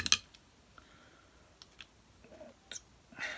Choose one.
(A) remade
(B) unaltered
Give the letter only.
B